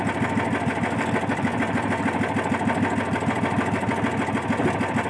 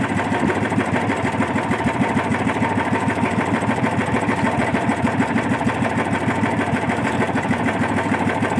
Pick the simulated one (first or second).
second